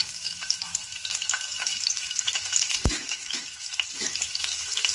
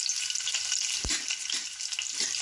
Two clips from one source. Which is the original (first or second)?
second